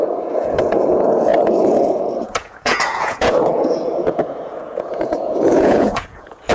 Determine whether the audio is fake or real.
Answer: fake